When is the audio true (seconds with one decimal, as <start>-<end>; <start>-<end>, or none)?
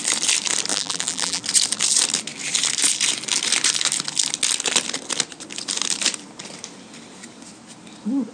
0.0-0.7; 1.4-8.3